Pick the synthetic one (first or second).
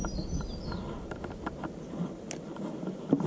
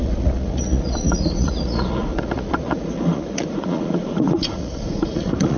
second